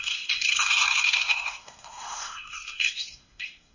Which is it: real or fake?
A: fake